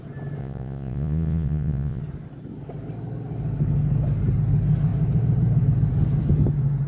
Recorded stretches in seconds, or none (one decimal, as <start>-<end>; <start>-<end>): 0.0-0.4; 2.0-6.9

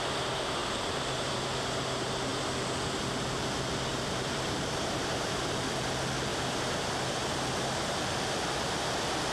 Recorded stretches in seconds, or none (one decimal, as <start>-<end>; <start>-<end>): 0.0-0.6; 1.3-3.9; 5.4-6.3; 7.0-9.3

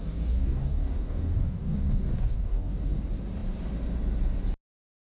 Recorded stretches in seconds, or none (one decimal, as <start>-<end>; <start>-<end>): 3.0-5.0

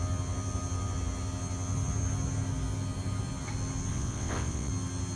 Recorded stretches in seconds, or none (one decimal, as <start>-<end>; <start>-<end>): 0.0-3.9; 4.7-5.2

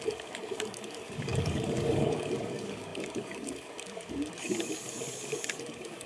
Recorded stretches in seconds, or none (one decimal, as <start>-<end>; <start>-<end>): none

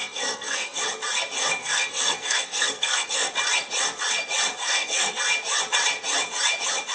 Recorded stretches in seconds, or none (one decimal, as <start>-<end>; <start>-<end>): 0.8-1.6; 3.3-4.6; 5.2-6.9

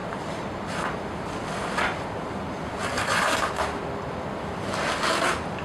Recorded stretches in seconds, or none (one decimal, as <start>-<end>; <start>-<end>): 1.2-2.9; 3.5-5.6

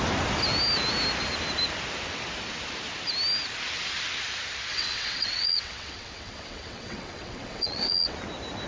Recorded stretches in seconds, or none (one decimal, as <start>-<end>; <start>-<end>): 0.0-4.7; 8.2-8.7